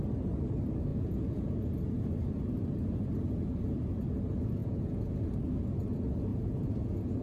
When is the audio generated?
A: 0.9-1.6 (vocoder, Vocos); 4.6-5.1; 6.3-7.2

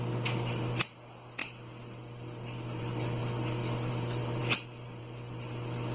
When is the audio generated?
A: none

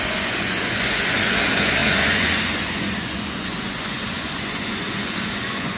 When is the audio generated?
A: 0.0-5.8 (vocoder, Vocos)

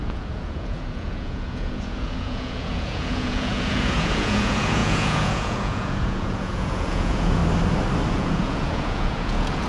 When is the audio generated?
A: 0.0-7.4 (vocoder, Vocos); 8.1-9.7